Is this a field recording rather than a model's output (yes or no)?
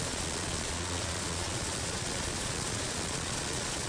no